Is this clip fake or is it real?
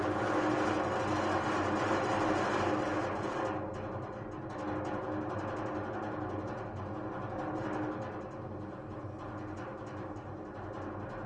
real